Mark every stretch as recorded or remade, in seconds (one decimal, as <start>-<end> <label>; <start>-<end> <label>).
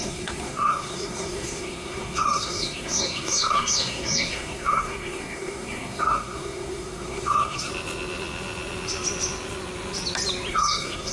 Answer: 0.0-7.7 remade; 7.7-10.5 recorded; 10.5-11.1 remade